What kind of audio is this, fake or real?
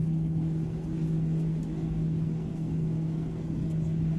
fake